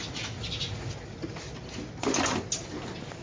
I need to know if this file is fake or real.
real